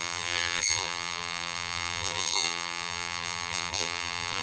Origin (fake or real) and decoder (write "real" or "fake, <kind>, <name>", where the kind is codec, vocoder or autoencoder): fake, vocoder, BigVGAN v2